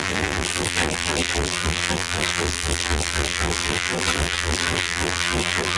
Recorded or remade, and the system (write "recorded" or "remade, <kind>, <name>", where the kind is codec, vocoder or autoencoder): remade, vocoder, BigVGAN v2